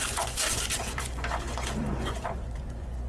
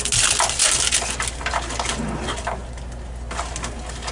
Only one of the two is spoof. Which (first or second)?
first